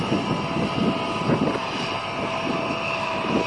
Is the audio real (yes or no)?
yes